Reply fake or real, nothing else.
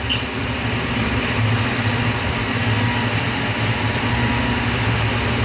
real